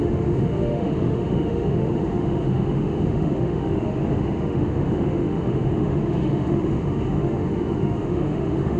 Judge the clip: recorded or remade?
remade